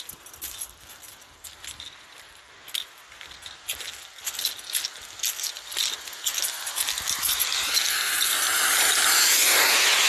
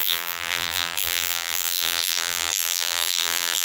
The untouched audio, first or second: first